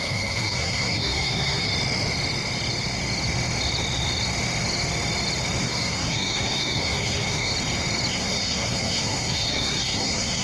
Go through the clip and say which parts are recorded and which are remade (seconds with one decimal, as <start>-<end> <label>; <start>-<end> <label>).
0.0-1.7 remade; 1.7-5.6 recorded; 5.6-7.5 remade; 7.5-8.1 recorded; 8.1-10.4 remade